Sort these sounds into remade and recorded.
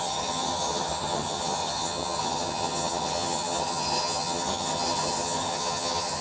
remade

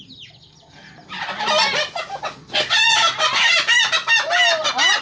recorded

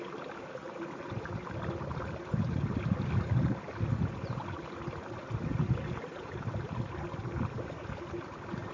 recorded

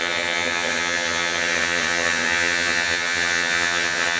remade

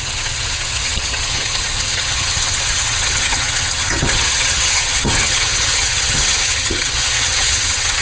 remade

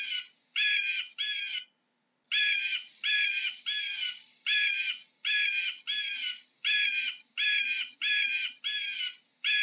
recorded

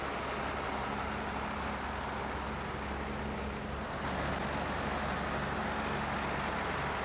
recorded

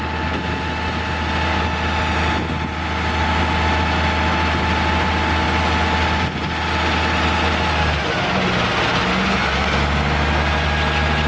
recorded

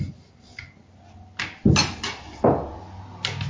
recorded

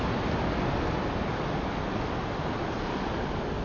recorded